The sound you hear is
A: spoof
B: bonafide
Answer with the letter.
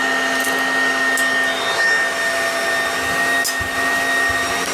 B